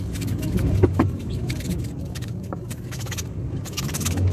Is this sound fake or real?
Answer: fake